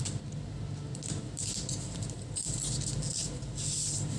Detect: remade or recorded recorded